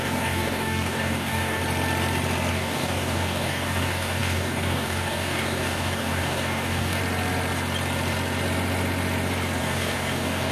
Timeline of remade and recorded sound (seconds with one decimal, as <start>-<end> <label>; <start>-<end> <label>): 0.0-1.6 remade; 1.6-2.5 recorded; 2.5-7.0 remade; 7.0-9.6 recorded; 9.6-10.5 remade